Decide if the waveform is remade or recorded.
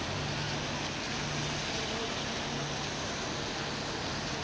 recorded